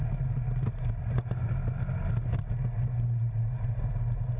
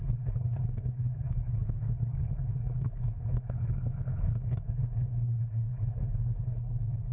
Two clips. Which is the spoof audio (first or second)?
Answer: second